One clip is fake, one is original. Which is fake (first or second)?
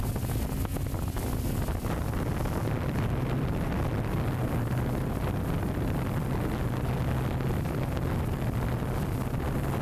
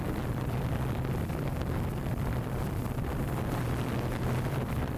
second